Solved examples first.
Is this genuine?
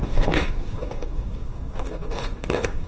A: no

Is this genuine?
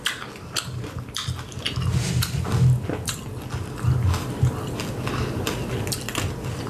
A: yes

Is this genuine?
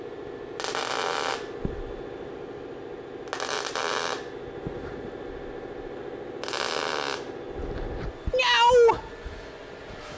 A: yes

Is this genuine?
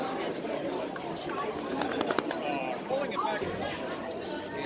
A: yes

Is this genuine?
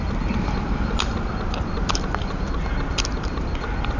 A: yes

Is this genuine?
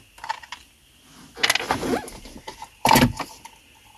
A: yes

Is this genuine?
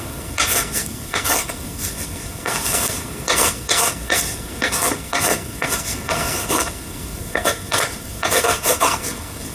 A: no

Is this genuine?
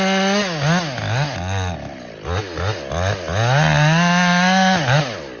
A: yes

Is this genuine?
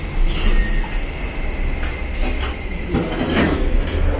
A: yes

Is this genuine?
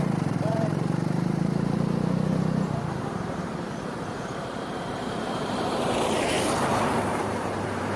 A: no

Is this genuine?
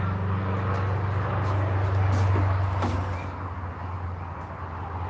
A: yes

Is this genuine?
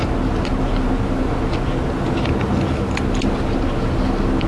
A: yes